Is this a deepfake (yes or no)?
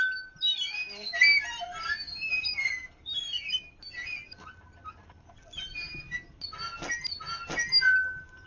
no